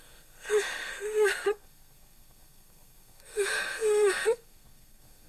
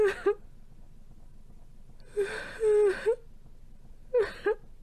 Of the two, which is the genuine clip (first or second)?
second